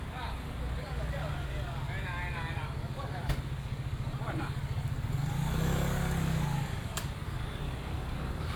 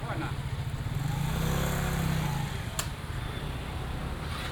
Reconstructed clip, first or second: first